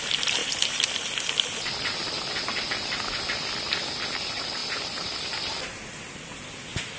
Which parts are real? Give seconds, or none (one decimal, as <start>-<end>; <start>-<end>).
0.0-0.4; 0.9-7.0